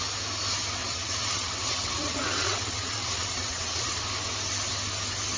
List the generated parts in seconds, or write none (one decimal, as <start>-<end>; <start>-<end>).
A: 0.8-4.0